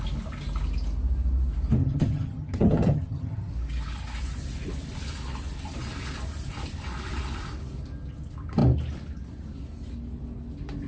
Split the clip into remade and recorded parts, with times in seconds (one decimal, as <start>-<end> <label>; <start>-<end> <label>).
0.0-1.8 recorded; 1.8-3.5 remade; 3.5-10.9 recorded